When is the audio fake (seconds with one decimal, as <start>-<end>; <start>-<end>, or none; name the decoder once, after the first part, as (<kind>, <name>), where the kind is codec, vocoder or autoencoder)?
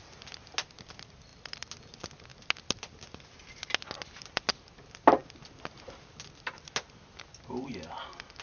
none